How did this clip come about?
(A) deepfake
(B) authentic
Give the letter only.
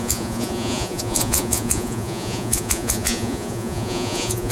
A